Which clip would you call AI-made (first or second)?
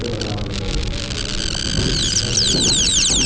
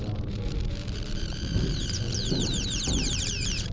second